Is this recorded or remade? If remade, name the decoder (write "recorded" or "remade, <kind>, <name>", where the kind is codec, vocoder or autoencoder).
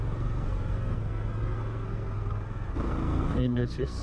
remade, codec, SNAC